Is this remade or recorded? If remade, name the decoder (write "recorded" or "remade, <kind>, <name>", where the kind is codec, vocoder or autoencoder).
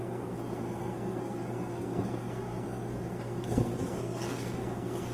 remade, codec, SNAC